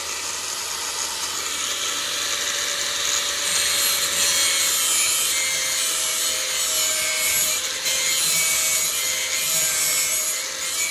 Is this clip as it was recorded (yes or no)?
yes